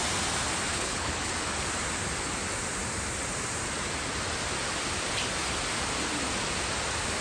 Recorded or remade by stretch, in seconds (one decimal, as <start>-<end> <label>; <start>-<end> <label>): 0.0-0.7 recorded; 0.7-1.3 remade; 1.3-7.2 recorded